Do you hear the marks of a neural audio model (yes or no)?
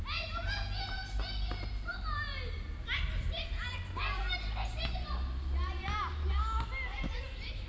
no